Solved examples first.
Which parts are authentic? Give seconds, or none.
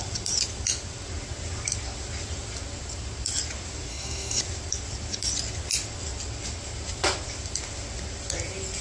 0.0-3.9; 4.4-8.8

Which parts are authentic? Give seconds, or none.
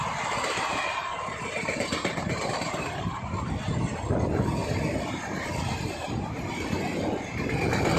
0.0-0.7; 3.2-8.0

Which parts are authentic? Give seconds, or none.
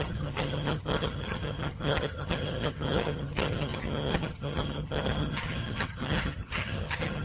none